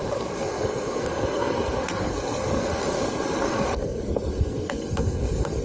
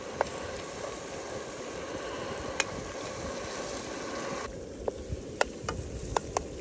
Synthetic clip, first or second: first